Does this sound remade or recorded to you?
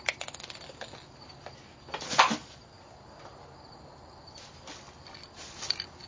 recorded